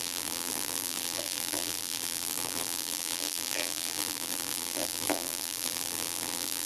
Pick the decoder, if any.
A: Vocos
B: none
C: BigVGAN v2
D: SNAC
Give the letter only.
C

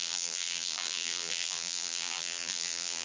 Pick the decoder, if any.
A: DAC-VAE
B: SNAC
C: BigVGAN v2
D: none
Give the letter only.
C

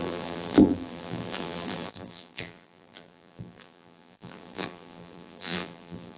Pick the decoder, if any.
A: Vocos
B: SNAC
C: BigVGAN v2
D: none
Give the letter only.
C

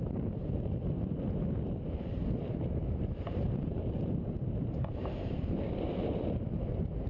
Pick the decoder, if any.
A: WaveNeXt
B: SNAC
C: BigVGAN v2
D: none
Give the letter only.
C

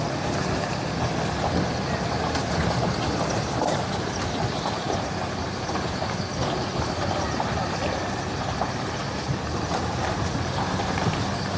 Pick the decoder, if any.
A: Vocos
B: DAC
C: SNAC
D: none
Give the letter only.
D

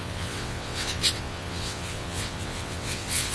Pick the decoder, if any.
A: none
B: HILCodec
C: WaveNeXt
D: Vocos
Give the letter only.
C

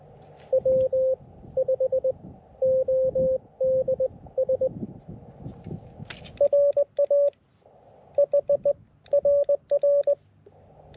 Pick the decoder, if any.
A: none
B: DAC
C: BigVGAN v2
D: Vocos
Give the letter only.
A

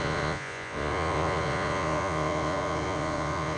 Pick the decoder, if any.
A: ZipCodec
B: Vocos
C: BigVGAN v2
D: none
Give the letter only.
B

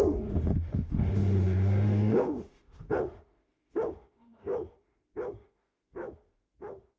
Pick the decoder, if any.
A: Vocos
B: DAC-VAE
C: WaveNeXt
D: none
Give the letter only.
B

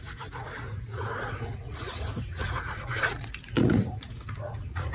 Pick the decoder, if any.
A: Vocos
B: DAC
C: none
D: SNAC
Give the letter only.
A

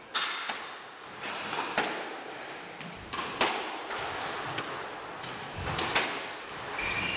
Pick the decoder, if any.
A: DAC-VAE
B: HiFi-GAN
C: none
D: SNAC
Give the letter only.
C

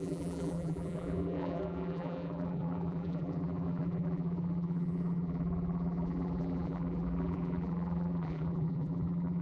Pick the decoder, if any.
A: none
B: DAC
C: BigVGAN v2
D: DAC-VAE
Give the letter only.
C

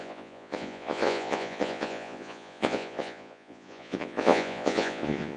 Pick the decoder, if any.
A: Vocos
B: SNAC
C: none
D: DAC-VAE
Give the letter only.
A